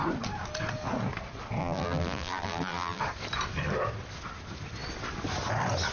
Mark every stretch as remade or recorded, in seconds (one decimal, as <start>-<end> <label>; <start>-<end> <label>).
0.0-1.6 recorded; 1.6-3.0 remade; 3.0-5.9 recorded